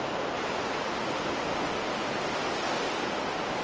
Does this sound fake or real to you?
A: real